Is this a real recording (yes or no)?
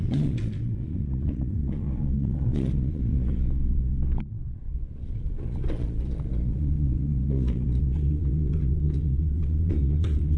no